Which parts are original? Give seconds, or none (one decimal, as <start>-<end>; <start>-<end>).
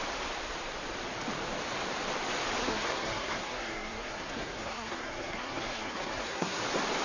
0.0-2.6; 6.6-7.0